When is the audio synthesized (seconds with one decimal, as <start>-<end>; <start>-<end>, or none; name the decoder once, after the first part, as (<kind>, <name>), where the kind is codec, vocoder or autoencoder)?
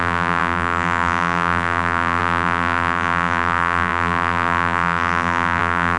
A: 0.0-6.0 (vocoder, BigVGAN v2)